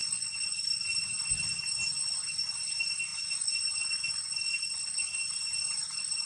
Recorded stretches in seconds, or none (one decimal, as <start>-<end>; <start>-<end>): 0.9-6.3